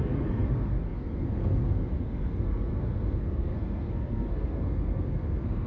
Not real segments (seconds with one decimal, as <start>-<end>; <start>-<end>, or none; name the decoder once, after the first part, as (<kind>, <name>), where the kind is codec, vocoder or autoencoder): 0.0-5.7 (codec, SNAC)